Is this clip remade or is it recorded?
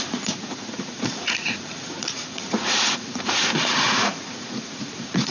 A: remade